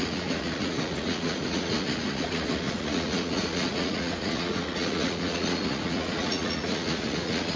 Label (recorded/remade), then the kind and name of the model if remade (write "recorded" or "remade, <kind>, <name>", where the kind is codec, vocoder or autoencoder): remade, vocoder, Vocos